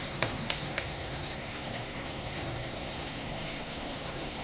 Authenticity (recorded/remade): remade